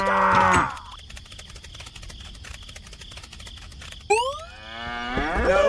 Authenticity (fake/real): real